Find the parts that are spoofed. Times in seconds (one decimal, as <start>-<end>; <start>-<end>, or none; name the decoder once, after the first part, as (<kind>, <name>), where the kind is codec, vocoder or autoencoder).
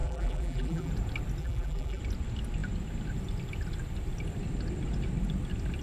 0.0-0.9 (vocoder, BigVGAN v2); 1.4-2.0